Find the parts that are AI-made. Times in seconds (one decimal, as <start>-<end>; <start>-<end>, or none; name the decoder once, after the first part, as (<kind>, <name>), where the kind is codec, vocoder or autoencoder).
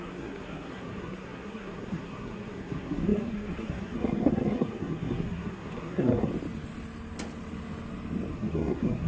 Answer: 0.0-6.3 (codec, SNAC); 8.3-9.1